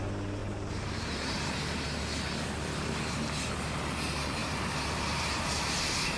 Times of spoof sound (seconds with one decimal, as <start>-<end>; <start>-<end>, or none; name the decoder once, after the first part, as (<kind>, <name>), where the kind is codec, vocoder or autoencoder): 0.4-2.0 (vocoder, BigVGAN v2); 4.4-5.8

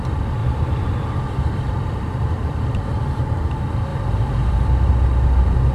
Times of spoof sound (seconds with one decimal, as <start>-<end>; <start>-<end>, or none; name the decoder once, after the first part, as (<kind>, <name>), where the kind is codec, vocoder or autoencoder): 0.4-3.4 (vocoder, BigVGAN v2); 3.9-4.5

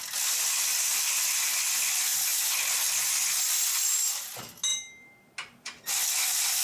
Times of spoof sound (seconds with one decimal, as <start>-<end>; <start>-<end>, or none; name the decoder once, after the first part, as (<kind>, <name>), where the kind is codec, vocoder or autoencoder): none

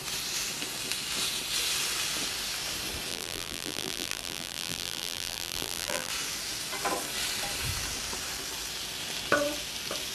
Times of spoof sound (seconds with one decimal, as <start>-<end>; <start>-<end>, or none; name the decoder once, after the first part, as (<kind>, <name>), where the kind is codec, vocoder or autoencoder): 3.1-6.1 (vocoder, BigVGAN v2)